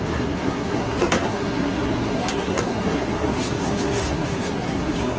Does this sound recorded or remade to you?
remade